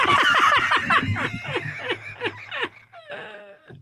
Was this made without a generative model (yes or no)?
yes